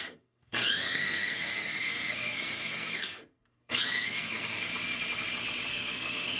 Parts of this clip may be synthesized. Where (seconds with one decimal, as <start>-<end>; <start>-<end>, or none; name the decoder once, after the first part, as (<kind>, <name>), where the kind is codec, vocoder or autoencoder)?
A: 0.0-4.7 (codec, SNAC); 5.7-6.4